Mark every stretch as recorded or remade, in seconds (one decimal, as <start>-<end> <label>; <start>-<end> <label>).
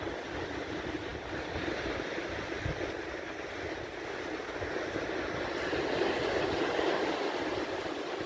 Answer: 0.0-8.3 recorded